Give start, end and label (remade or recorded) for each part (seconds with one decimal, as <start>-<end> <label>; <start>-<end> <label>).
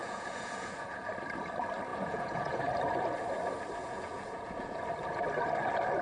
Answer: 0.0-1.1 remade; 1.1-1.9 recorded; 1.9-2.6 remade; 2.6-3.8 recorded; 3.8-4.8 remade; 4.8-6.0 recorded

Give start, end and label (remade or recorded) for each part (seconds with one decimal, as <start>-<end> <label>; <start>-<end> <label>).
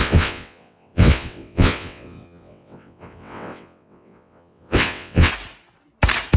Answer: 0.0-5.3 remade; 5.3-6.4 recorded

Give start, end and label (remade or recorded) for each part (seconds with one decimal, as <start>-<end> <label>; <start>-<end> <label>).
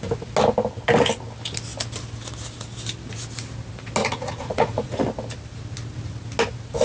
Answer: 0.0-4.0 recorded; 4.0-5.0 remade; 5.0-6.8 recorded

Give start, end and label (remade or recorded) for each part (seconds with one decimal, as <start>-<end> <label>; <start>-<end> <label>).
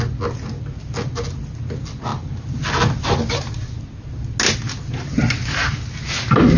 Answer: 0.0-6.6 recorded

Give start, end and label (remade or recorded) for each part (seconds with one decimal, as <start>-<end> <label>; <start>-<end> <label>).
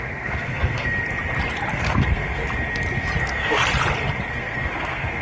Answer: 0.0-1.0 remade; 1.0-1.7 recorded; 1.7-2.4 remade; 2.4-3.2 recorded; 3.2-3.6 remade; 3.6-4.3 recorded; 4.3-5.2 remade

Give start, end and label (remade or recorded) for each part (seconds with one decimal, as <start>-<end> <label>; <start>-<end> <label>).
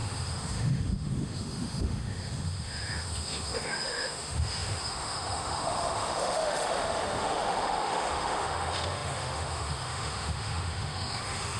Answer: 0.0-11.6 remade